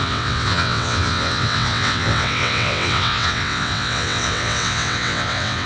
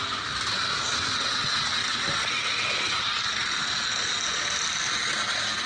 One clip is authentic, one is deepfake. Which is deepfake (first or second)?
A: first